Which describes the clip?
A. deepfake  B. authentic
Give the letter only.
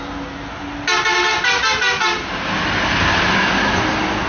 B